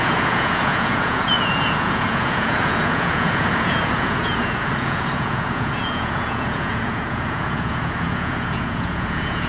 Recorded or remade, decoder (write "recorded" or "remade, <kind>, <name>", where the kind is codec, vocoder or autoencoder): remade, vocoder, Vocos